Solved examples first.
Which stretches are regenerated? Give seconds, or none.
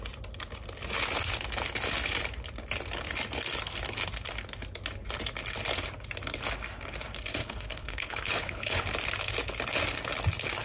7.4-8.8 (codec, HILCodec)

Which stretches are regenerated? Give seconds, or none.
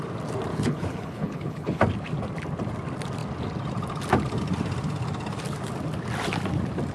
0.5-1.8 (codec, HILCodec)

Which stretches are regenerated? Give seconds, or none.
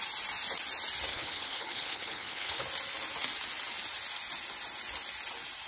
1.1-2.6 (codec, HILCodec)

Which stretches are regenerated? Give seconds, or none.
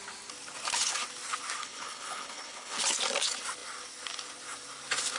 1.6-2.8 (codec, HILCodec)